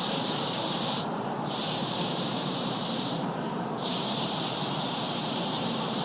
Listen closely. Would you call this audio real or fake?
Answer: fake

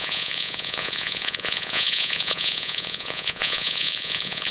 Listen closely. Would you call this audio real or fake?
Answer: fake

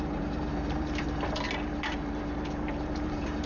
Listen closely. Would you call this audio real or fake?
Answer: fake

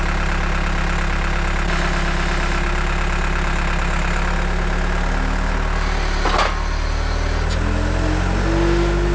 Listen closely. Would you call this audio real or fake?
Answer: real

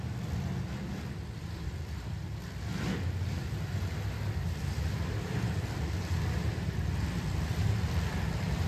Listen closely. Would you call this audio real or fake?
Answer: fake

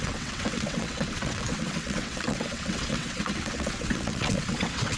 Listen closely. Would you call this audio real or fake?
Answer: fake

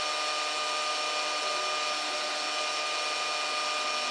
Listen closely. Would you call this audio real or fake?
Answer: real